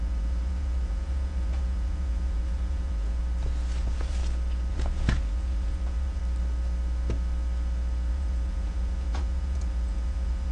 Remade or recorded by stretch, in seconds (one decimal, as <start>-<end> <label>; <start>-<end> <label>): 0.0-3.2 remade; 3.2-3.8 recorded; 3.8-4.2 remade; 4.2-4.7 recorded; 4.7-6.2 remade; 6.2-8.1 recorded; 8.1-10.5 remade